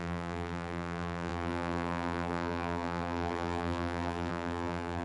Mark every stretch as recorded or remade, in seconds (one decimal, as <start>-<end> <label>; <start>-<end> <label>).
0.0-5.0 remade